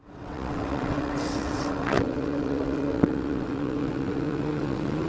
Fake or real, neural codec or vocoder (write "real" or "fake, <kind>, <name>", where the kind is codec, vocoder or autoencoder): fake, vocoder, WaveNeXt